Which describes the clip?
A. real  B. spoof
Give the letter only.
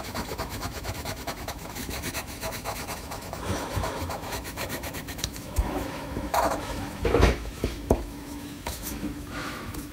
B